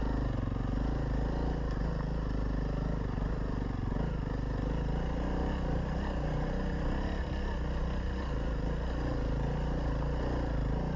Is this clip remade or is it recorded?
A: recorded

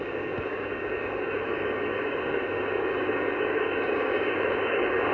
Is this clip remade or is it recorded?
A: remade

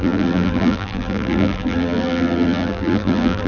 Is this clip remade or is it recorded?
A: remade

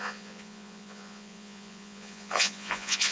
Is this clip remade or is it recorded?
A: remade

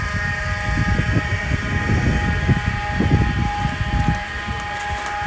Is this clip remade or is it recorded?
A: recorded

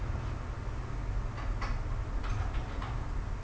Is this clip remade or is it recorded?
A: recorded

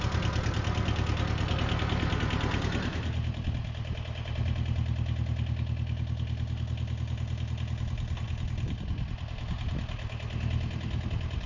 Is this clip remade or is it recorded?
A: recorded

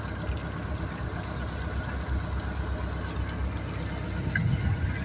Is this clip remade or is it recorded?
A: recorded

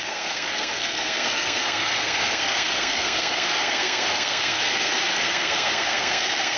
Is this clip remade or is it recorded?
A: remade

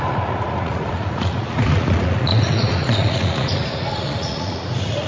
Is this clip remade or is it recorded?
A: remade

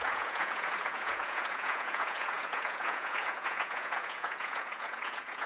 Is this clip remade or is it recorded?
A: remade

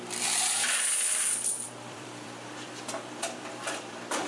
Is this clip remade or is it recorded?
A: remade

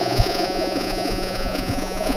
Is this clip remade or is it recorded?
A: remade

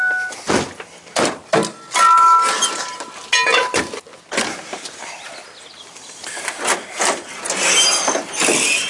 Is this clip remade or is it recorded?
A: recorded